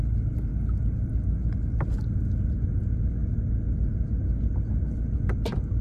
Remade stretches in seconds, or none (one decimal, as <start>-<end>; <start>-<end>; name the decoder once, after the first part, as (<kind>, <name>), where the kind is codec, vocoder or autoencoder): none